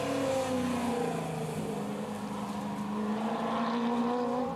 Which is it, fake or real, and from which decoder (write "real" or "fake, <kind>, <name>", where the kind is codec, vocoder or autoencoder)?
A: real